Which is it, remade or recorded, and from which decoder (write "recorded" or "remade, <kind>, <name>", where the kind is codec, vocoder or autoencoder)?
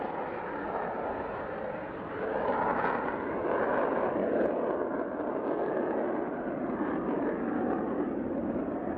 recorded